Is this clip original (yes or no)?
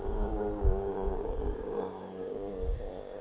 no